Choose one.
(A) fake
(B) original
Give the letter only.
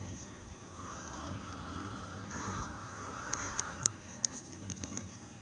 A